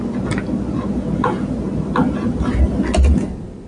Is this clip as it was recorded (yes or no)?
yes